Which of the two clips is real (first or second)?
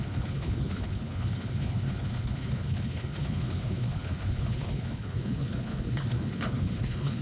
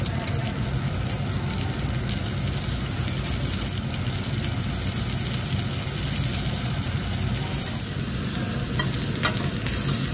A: second